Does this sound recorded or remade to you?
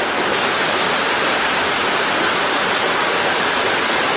recorded